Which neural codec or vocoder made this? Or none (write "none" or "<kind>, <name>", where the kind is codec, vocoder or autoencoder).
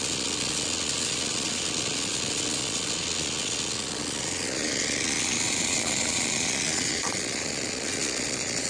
vocoder, Vocos